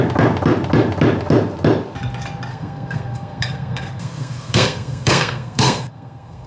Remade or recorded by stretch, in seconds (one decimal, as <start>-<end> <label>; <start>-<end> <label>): 0.0-2.5 recorded; 2.5-6.5 remade